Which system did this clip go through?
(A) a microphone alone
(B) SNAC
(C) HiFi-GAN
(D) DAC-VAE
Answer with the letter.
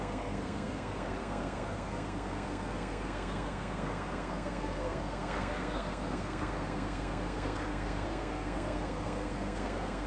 B